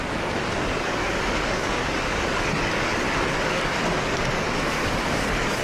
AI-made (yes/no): yes